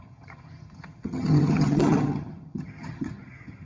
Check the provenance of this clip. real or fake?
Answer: fake